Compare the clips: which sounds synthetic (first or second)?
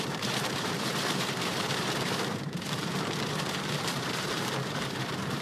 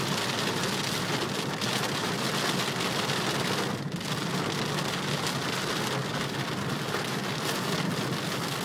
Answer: first